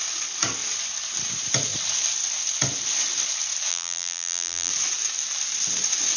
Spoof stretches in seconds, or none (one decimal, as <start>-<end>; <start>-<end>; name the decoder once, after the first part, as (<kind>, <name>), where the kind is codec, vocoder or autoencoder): 3.7-4.7 (vocoder, BigVGAN v2)